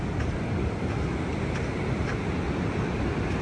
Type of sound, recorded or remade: recorded